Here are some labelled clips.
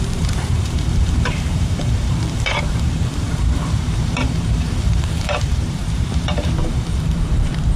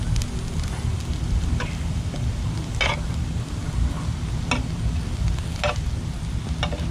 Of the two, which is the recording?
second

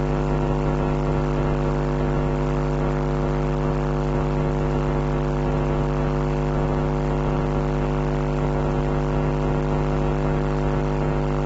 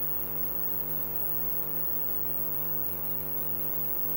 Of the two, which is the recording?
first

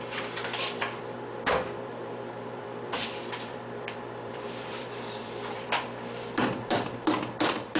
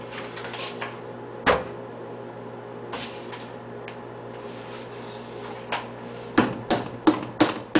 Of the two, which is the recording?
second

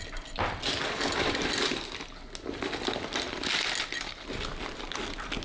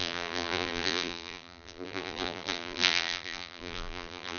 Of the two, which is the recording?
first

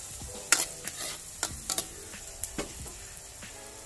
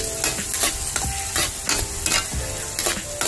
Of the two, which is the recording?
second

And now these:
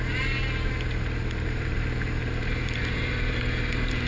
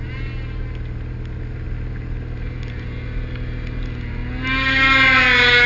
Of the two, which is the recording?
second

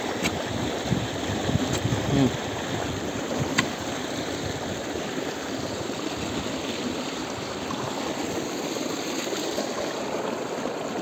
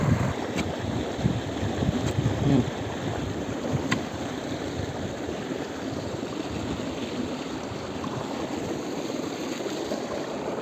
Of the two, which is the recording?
first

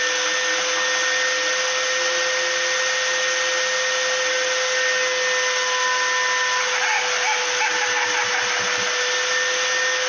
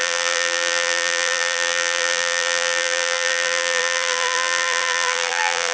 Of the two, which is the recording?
first